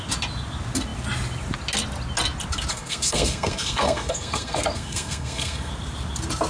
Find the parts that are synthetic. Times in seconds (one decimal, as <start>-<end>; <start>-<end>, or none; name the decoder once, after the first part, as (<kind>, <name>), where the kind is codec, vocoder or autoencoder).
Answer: 2.7-5.7 (codec, SNAC)